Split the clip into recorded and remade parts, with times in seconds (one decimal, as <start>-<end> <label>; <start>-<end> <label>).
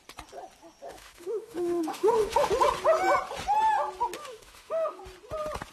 0.0-0.9 recorded; 0.9-2.5 remade; 2.5-4.2 recorded; 4.2-5.0 remade; 5.0-5.7 recorded